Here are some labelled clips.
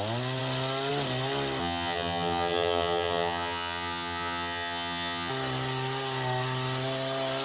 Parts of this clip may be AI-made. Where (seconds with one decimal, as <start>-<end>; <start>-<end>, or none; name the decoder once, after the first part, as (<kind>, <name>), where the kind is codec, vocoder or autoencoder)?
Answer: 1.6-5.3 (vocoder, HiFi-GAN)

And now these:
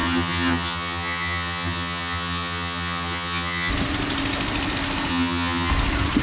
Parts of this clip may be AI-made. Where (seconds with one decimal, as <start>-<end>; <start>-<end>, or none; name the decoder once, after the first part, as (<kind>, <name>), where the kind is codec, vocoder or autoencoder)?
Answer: 0.0-3.7 (vocoder, HiFi-GAN); 5.1-5.7

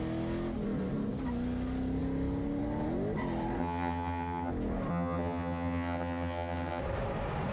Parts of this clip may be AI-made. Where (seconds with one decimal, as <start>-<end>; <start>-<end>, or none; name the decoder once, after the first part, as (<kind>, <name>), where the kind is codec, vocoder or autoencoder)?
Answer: 3.6-4.5 (vocoder, HiFi-GAN); 4.9-6.8